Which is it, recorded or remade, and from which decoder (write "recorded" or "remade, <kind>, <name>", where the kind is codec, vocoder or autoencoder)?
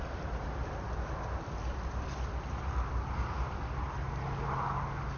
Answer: recorded